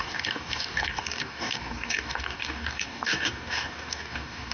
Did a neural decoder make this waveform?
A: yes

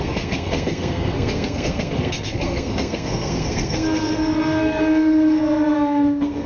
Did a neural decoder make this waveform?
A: yes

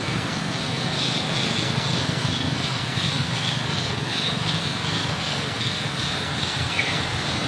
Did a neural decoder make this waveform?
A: yes